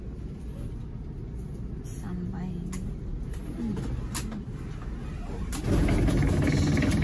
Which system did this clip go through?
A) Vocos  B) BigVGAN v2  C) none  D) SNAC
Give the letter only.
C